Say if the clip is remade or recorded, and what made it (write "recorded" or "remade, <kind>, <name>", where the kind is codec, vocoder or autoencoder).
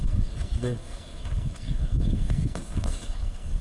remade, codec, SNAC